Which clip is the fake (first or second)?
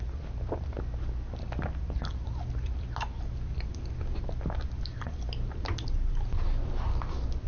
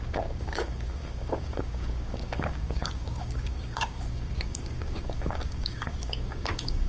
second